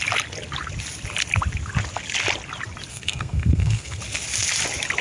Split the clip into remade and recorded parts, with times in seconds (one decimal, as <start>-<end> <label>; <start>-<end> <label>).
0.0-2.9 recorded; 2.9-4.0 remade; 4.0-5.0 recorded